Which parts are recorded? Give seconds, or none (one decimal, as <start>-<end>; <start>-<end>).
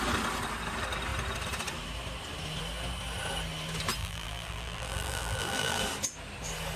0.0-4.0; 5.8-6.8